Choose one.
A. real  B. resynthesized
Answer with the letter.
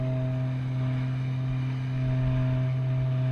A